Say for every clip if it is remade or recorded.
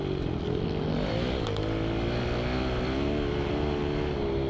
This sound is recorded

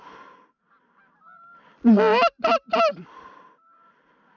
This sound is recorded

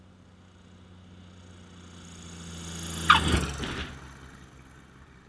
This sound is recorded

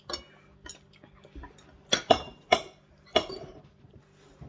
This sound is recorded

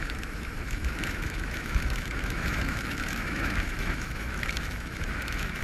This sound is remade